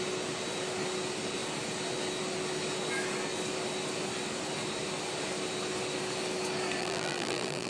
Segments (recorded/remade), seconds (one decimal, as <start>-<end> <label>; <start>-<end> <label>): 0.0-6.8 recorded; 6.8-7.7 remade